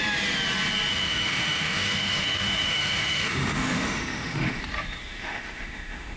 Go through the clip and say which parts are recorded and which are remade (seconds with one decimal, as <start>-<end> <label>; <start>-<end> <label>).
0.0-0.9 recorded; 0.9-4.6 remade; 4.6-5.0 recorded; 5.0-6.2 remade